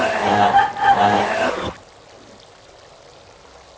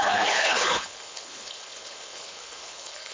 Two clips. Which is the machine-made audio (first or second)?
second